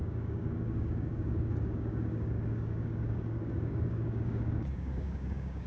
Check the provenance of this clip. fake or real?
fake